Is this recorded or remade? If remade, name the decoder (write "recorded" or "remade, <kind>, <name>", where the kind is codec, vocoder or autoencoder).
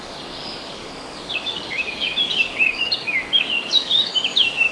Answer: remade, codec, DAC